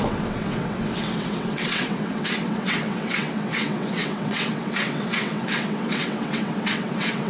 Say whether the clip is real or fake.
fake